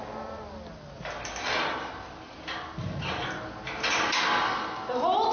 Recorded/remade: recorded